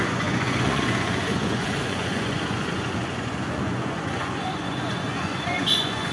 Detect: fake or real fake